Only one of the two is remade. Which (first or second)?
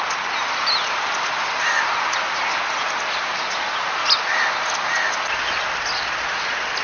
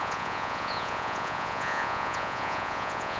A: second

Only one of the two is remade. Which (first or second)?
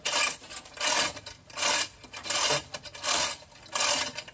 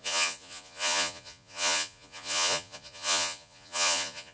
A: second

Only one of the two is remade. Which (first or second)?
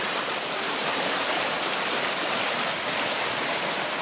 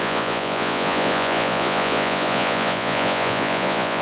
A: second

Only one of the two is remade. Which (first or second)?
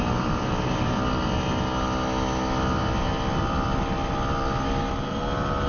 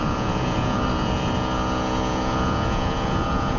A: second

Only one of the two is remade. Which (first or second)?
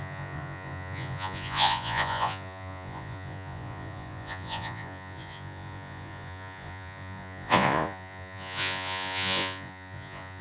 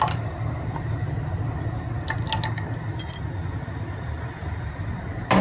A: first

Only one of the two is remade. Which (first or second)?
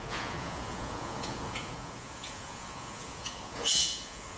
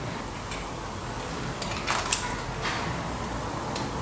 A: first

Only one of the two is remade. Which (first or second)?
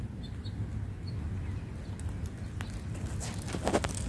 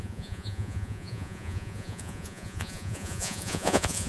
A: second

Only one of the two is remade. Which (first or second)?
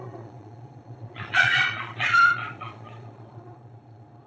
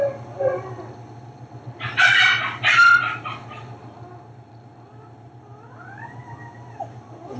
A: first